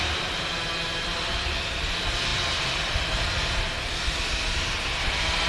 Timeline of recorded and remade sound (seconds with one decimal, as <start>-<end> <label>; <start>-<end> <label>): 0.0-5.5 recorded